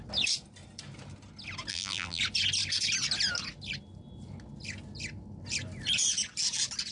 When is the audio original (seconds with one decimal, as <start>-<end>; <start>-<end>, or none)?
0.0-1.7; 2.2-6.9